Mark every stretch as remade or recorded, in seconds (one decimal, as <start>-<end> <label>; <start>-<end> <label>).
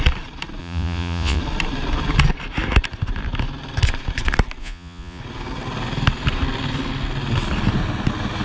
0.0-0.6 recorded; 0.6-1.4 remade; 1.4-4.6 recorded; 4.6-5.2 remade; 5.2-8.4 recorded